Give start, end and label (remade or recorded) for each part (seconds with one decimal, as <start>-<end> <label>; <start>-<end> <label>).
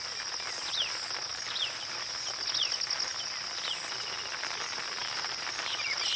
0.0-1.3 recorded; 1.3-2.0 remade; 2.0-5.0 recorded; 5.0-6.2 remade